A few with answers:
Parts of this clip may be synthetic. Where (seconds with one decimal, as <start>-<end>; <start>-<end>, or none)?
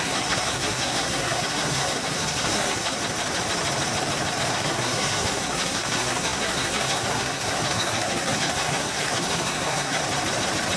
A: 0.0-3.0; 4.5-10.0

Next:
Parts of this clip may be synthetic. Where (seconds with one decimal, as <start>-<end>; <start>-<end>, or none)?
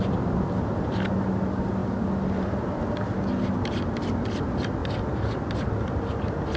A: none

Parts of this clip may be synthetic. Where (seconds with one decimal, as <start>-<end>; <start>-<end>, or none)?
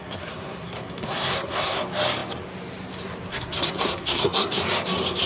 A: 0.0-1.8; 3.3-4.6